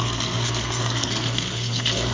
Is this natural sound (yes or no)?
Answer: no